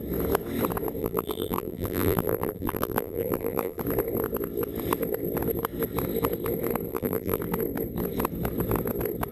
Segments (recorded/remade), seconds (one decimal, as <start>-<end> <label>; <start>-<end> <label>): 0.0-1.0 recorded; 1.0-3.8 remade; 3.8-6.9 recorded; 6.9-7.4 remade; 7.4-9.3 recorded

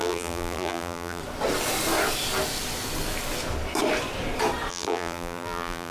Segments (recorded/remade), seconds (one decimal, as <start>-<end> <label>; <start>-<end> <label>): 0.0-1.2 remade; 1.2-4.7 recorded; 4.7-5.9 remade

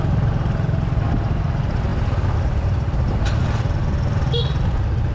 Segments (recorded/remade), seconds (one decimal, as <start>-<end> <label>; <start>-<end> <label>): 0.0-5.1 recorded